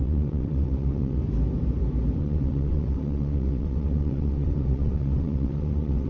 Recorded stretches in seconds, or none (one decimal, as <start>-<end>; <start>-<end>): 1.2-2.2

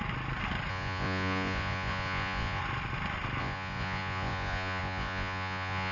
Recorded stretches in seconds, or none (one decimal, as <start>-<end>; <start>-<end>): 0.0-0.7; 2.6-3.4

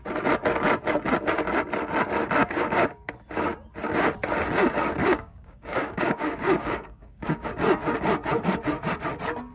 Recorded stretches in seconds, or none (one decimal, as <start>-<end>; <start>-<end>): 0.0-2.4; 3.1-5.0; 7.5-9.5